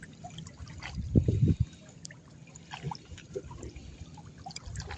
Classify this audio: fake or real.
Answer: real